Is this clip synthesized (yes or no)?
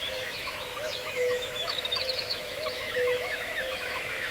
yes